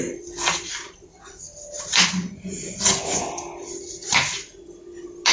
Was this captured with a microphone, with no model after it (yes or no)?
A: yes